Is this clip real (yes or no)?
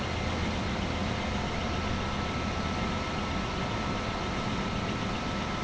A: yes